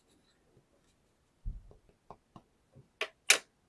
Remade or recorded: recorded